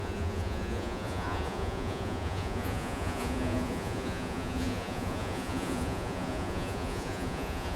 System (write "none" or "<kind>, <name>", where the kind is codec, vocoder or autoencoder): vocoder, Vocos